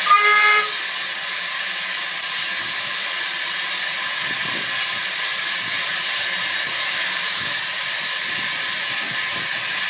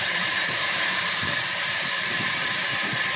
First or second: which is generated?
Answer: second